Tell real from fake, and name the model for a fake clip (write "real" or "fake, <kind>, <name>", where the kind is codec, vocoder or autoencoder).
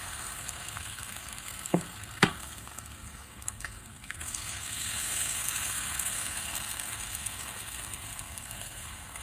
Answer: fake, codec, SNAC